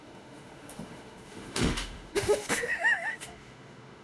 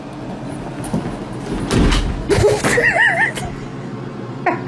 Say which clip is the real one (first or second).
second